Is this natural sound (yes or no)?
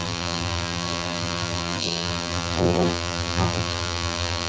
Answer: no